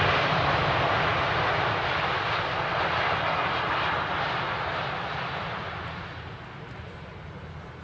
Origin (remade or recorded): recorded